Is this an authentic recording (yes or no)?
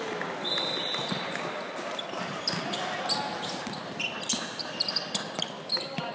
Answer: yes